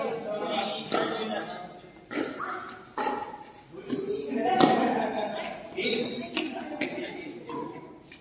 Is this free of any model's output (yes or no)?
yes